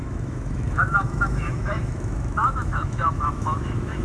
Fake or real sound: fake